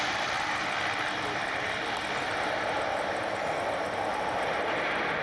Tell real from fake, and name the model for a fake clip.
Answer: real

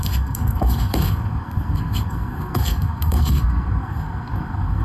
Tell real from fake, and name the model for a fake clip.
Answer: fake, codec, SNAC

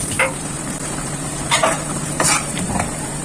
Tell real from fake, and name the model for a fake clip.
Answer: fake, vocoder, BigVGAN v2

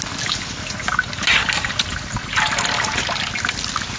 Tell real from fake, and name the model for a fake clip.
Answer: real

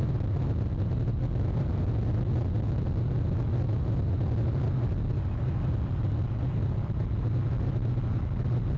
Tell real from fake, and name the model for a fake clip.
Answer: real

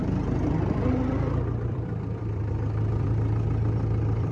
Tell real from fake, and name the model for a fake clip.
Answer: fake, vocoder, BigVGAN v2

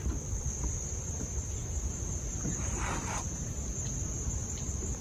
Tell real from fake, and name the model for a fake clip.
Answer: real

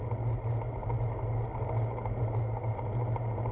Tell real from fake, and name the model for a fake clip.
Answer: real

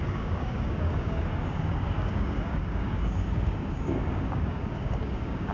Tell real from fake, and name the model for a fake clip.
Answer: fake, codec, DAC